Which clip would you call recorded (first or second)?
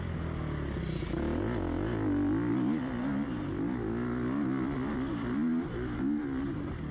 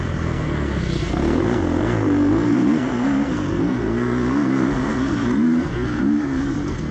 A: first